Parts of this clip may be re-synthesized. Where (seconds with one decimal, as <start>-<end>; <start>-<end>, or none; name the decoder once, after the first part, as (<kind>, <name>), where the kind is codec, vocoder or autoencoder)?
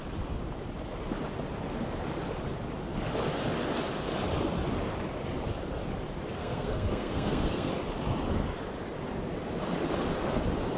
6.4-7.7 (codec, SNAC)